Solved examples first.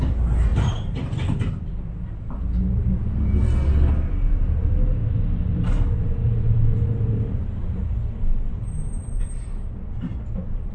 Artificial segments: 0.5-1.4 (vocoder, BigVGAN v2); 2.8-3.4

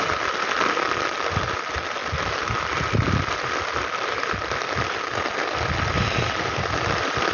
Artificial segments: 0.0-2.0 (vocoder, BigVGAN v2); 2.6-7.3

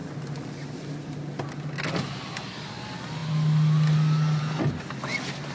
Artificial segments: none

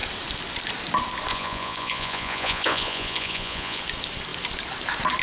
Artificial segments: 1.3-3.8 (vocoder, Vocos)